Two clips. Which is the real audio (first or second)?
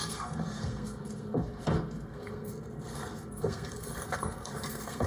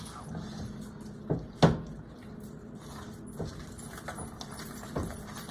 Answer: second